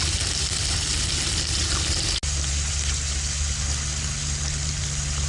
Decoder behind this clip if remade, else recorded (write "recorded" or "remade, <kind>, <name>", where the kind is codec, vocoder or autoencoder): recorded